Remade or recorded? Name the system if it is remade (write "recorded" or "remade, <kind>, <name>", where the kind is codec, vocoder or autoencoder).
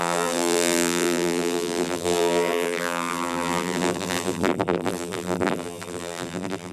remade, vocoder, BigVGAN v2